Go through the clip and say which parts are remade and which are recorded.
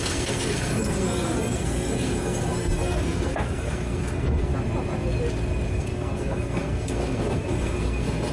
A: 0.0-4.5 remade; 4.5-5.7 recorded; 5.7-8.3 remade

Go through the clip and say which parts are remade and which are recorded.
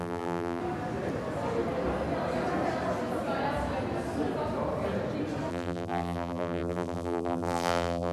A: 0.0-0.6 remade; 0.6-5.5 recorded; 5.5-8.1 remade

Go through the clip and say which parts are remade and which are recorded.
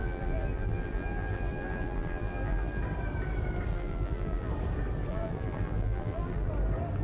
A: 0.0-2.8 remade; 2.8-3.7 recorded; 3.7-4.5 remade; 4.5-5.1 recorded; 5.1-6.5 remade; 6.5-7.0 recorded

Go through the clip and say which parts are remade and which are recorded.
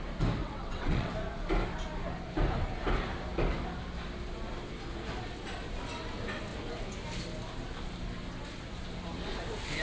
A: 0.0-0.4 recorded; 0.4-1.1 remade; 1.1-9.8 recorded